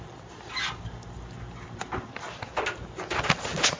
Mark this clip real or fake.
real